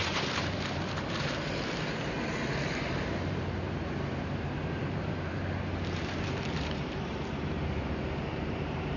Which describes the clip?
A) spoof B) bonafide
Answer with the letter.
A